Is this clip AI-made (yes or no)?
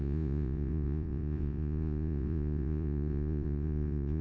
yes